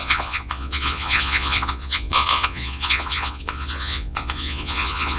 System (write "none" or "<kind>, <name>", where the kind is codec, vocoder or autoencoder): vocoder, Vocos